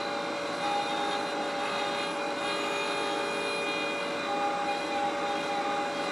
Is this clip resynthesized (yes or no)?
no